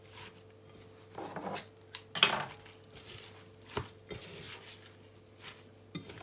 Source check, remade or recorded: recorded